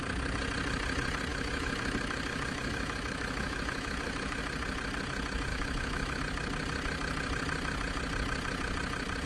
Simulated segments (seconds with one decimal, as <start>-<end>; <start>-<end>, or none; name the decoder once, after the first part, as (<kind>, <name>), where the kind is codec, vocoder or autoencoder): 1.3-4.4 (autoencoder, DAC-VAE); 5.5-6.2